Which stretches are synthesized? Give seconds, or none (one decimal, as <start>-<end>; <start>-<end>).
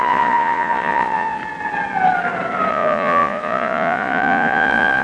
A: 0.0-1.4; 2.7-5.0